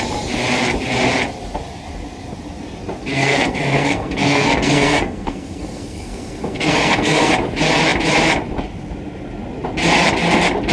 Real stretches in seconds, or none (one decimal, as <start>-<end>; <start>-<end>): 0.0-3.0; 7.3-10.7